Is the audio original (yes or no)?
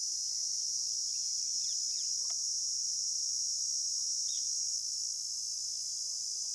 yes